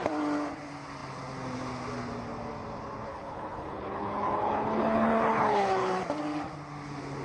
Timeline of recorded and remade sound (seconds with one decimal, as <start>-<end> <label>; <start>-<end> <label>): 0.0-3.1 recorded; 3.1-6.0 remade; 6.0-7.2 recorded